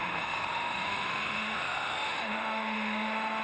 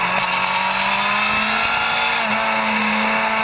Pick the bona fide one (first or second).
second